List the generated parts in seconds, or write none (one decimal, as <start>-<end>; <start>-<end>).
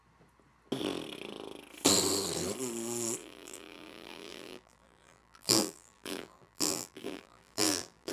3.2-8.1